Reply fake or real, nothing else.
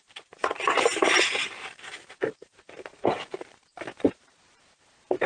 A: fake